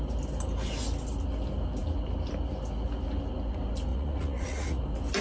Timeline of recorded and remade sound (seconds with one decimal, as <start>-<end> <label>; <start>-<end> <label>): 0.0-3.9 recorded; 3.9-4.8 remade; 4.8-5.2 recorded